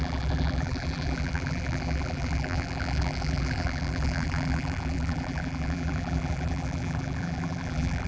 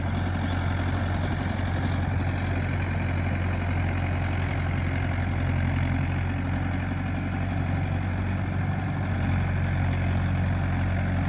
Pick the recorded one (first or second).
second